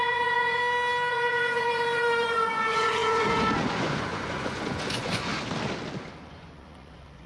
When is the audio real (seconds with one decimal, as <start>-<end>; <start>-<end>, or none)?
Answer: 0.6-1.1; 5.3-6.0